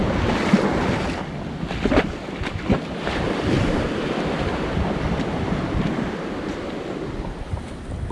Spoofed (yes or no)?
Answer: no